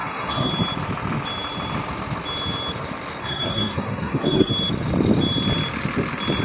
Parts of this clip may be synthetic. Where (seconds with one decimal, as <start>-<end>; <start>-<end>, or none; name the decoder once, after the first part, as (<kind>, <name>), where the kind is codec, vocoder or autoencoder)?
0.0-0.5 (codec, SNAC); 3.2-4.5